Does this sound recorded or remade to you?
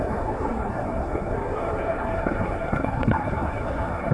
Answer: remade